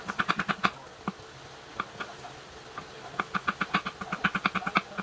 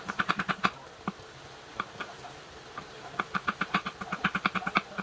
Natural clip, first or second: first